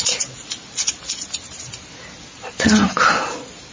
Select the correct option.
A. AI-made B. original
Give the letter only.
B